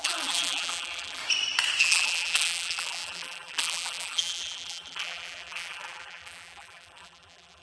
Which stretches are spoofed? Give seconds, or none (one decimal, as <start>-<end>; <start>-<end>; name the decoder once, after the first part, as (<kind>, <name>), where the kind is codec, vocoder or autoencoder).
0.0-1.2 (vocoder, BigVGAN v2); 1.8-7.6